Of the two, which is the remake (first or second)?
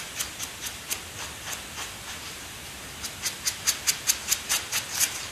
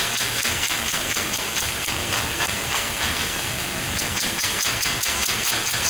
second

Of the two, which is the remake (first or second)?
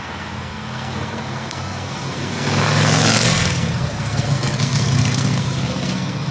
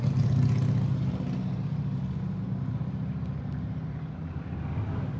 first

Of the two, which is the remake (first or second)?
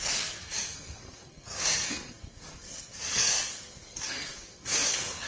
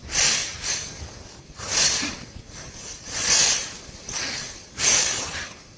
first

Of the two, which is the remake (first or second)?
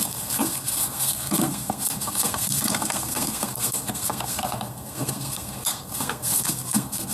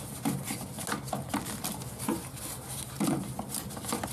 first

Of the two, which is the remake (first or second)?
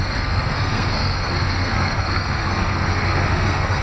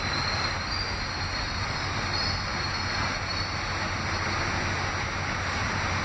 first